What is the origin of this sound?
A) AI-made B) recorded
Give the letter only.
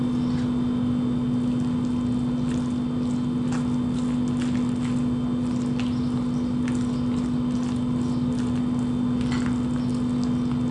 B